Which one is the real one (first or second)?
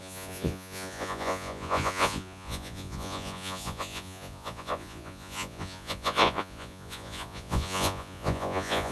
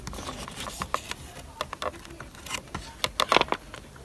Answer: second